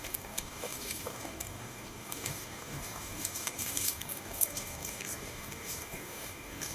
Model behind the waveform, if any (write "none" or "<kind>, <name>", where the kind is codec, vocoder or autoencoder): codec, DAC